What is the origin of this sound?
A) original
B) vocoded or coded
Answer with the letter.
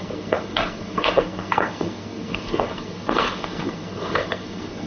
B